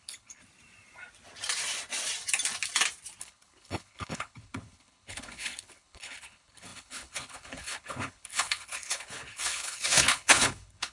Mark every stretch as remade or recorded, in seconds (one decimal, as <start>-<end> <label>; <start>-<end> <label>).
0.0-0.4 remade; 0.4-3.2 recorded; 3.2-10.9 remade